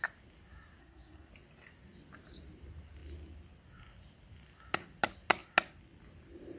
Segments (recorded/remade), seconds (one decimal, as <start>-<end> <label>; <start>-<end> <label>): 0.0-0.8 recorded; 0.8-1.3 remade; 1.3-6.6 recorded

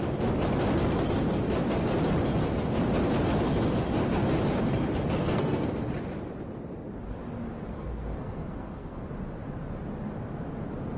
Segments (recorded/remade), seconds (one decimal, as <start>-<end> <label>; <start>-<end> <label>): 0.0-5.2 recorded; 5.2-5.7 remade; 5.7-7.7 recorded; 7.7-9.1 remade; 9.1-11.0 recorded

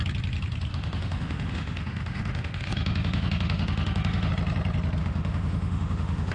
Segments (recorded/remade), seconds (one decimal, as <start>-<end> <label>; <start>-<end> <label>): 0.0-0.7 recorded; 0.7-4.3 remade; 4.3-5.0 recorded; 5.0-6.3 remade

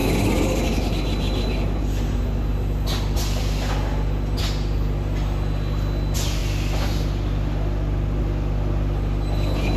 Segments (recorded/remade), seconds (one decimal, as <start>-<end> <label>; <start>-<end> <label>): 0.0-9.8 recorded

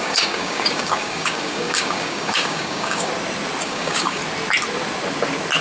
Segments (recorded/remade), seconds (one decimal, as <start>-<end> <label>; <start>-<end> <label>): 0.0-3.1 remade; 3.1-3.6 recorded; 3.6-4.2 remade; 4.2-5.6 recorded

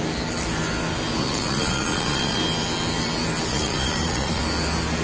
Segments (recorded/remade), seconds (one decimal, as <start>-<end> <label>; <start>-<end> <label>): 0.0-1.2 recorded; 1.2-2.4 remade; 2.4-3.5 recorded; 3.5-4.4 remade; 4.4-5.0 recorded